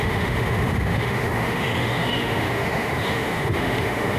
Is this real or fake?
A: fake